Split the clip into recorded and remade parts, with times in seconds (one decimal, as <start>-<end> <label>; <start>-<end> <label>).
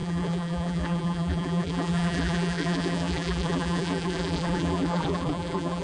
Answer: 0.0-5.8 remade